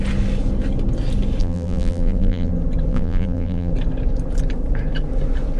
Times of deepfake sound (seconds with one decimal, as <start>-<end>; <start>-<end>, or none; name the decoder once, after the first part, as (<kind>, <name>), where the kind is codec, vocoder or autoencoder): 1.4-2.5 (vocoder, BigVGAN v2); 2.9-3.7